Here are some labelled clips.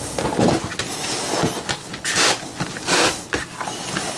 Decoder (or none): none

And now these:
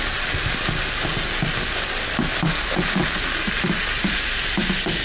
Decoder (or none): none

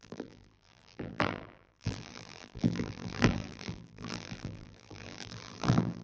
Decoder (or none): vocoder, BigVGAN v2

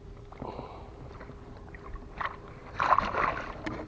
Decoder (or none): none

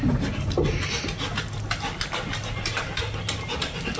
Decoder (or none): none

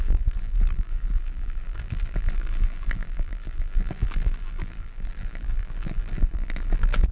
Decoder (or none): vocoder, BigVGAN v2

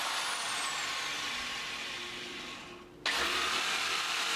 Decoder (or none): none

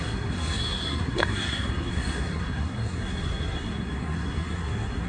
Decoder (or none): codec, SNAC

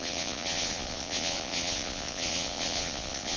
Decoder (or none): vocoder, Vocos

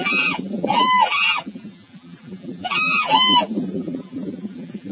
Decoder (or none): vocoder, BigVGAN v2